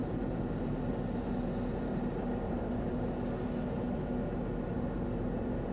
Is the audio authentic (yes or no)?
yes